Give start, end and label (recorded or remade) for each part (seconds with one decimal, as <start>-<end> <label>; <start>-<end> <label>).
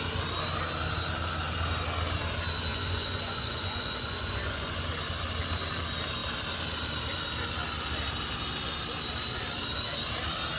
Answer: 0.0-2.7 recorded; 2.7-4.8 remade; 4.8-10.6 recorded